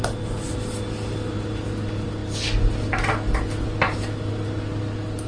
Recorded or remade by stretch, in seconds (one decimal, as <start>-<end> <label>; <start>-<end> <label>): 0.0-5.3 recorded